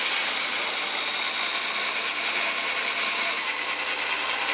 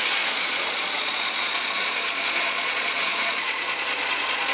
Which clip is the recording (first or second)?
first